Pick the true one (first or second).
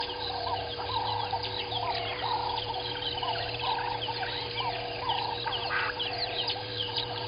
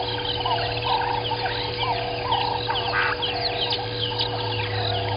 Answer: second